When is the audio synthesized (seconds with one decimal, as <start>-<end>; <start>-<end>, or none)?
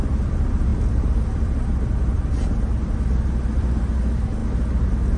none